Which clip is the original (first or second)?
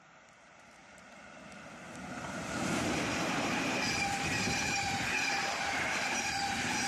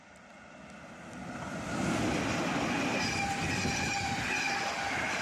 second